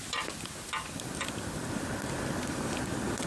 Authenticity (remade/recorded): recorded